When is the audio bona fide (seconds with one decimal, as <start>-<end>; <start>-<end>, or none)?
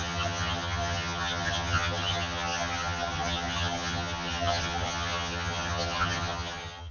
none